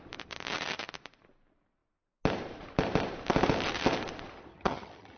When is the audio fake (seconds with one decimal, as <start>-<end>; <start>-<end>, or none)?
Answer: 4.5-5.2